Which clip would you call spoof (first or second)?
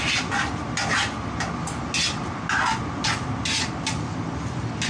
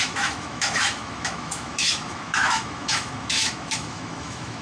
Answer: second